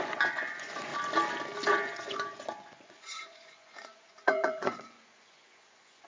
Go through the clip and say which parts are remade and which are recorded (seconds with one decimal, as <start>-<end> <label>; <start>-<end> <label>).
0.0-0.9 remade; 0.9-1.7 recorded; 1.7-6.1 remade